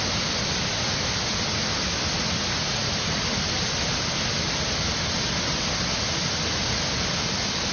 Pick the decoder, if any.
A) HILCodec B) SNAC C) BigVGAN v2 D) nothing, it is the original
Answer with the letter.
D